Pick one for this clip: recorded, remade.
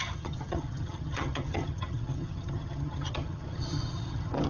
remade